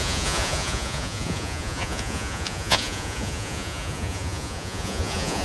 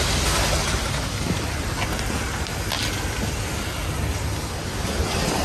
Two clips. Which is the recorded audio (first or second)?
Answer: second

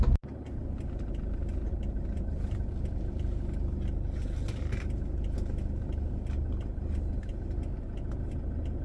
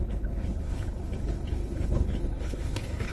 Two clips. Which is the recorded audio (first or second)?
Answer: first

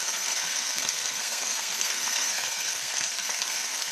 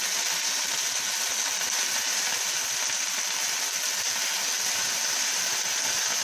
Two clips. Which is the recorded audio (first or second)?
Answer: second